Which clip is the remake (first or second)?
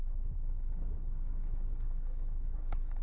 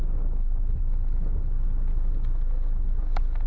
first